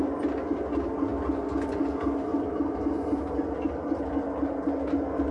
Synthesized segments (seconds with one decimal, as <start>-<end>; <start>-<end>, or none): none